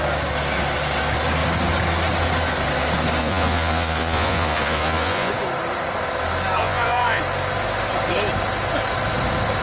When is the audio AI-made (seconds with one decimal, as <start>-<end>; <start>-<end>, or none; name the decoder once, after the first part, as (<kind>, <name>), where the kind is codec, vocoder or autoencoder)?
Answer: 3.2-5.3 (vocoder, Vocos); 6.6-7.2